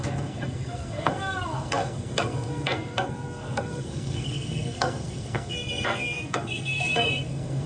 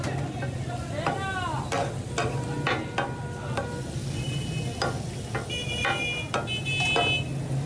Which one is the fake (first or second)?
first